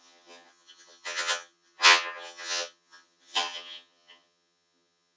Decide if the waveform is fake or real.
fake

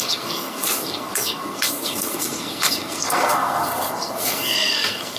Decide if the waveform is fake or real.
fake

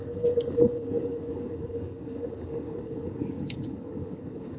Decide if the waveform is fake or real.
fake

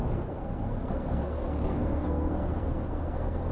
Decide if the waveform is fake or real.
fake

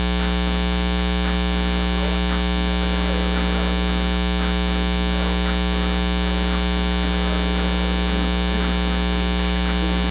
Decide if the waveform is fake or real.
real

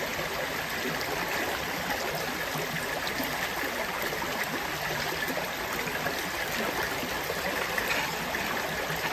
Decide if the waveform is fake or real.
real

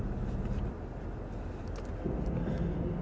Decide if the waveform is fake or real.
real